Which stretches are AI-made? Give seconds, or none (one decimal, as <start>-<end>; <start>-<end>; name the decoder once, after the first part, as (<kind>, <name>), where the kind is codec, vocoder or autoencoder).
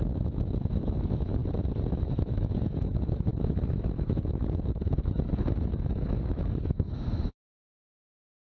0.0-1.4 (autoencoder, DAC-VAE); 1.9-8.5